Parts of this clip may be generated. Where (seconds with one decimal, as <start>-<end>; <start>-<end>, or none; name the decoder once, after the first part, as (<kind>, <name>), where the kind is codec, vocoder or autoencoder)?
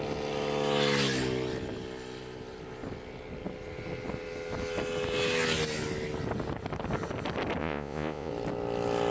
7.6-8.3 (vocoder, Vocos)